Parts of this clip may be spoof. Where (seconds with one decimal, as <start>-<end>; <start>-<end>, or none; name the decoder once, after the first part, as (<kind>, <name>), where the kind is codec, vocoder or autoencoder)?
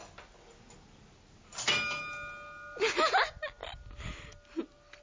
none